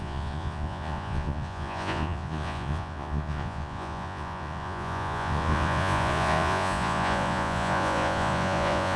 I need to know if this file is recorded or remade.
remade